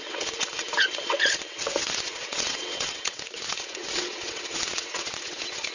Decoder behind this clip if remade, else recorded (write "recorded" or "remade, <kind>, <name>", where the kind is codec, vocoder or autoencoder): remade, vocoder, WaveNeXt